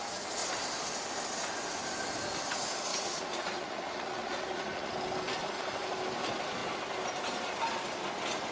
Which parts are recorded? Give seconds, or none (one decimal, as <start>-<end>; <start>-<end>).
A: 0.0-2.9; 4.9-8.5